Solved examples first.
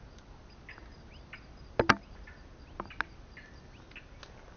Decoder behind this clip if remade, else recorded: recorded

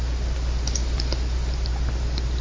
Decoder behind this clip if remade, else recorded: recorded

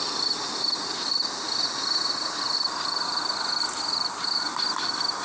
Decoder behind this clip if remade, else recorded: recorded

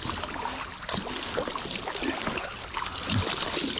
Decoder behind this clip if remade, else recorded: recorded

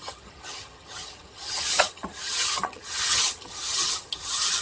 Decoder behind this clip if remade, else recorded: remade, vocoder, HiFi-GAN